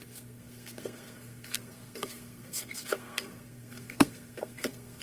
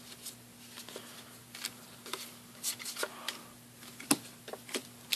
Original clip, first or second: second